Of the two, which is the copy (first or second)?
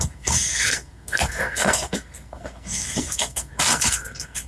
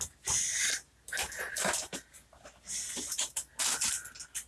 first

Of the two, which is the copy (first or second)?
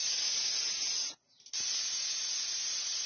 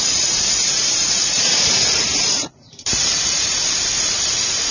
second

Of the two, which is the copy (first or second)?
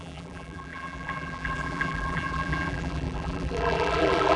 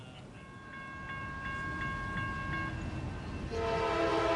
first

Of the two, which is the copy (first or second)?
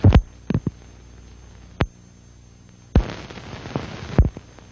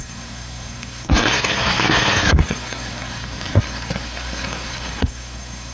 second